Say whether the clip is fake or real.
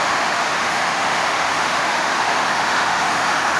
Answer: fake